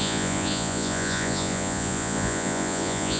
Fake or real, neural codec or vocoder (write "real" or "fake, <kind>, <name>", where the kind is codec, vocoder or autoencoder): fake, vocoder, Vocos